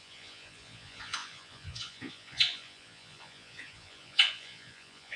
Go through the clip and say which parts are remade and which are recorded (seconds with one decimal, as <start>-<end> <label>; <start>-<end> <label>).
0.0-5.2 remade